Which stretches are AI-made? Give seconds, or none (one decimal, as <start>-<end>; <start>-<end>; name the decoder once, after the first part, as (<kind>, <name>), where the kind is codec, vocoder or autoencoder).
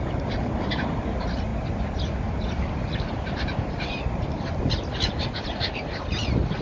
none